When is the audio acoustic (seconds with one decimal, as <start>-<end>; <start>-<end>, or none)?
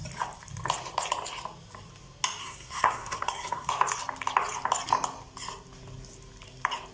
0.0-2.4; 3.7-6.9